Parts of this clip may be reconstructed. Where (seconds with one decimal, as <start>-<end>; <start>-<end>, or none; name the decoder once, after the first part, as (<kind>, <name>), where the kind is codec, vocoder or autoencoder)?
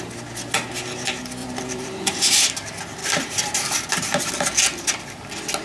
1.4-2.4 (vocoder, BigVGAN v2); 3.0-4.3